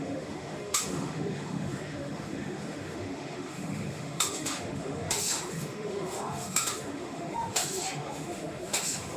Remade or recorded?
remade